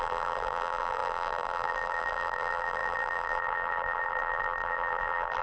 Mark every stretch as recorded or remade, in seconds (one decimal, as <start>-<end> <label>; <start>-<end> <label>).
0.0-5.4 remade